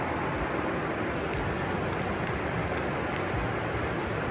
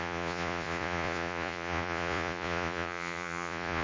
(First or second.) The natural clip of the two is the first